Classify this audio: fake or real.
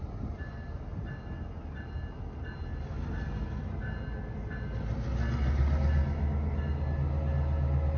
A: real